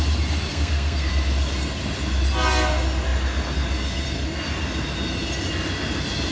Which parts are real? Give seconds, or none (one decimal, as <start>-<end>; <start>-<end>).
0.0-0.5; 1.1-6.3